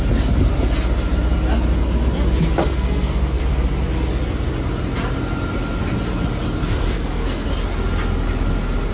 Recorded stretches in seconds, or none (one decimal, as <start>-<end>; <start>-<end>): 0.0-2.6; 3.4-6.6; 7.5-8.9